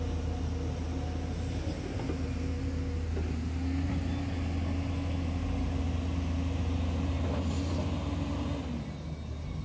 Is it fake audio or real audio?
real